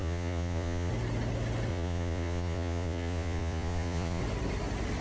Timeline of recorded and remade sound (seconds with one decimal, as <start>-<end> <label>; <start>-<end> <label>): 0.0-0.9 remade; 0.9-1.7 recorded; 1.7-4.2 remade; 4.2-5.0 recorded